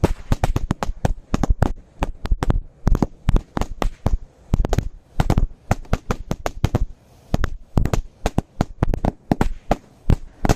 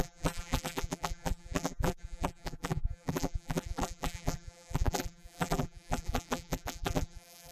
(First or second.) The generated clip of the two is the second